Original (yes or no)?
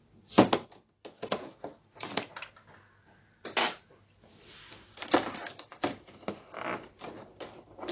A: yes